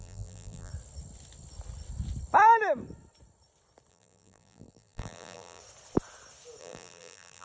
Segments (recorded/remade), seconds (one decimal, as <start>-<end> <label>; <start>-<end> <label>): 0.0-0.7 remade; 0.7-3.9 recorded; 3.9-5.6 remade; 5.6-6.6 recorded; 6.6-7.4 remade